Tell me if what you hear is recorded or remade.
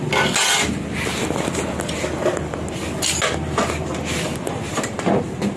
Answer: recorded